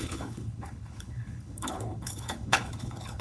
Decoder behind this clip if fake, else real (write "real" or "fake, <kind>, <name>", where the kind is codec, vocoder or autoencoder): fake, codec, HILCodec